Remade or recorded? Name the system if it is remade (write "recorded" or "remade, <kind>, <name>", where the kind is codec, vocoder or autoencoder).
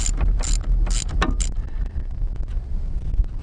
recorded